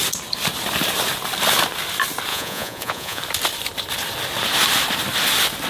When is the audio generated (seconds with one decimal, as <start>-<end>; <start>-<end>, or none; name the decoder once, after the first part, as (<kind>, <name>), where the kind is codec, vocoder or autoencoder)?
2.3-3.2 (vocoder, Vocos)